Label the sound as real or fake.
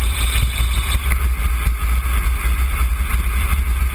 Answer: real